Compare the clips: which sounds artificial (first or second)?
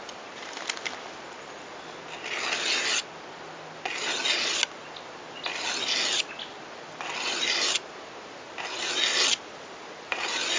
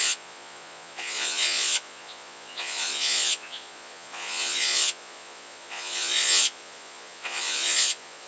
second